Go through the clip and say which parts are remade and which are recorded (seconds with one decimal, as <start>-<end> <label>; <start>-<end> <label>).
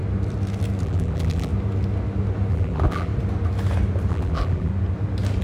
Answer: 0.0-0.8 recorded; 0.8-1.5 remade; 1.5-2.5 recorded; 2.5-3.1 remade; 3.1-4.1 recorded; 4.1-4.7 remade; 4.7-5.4 recorded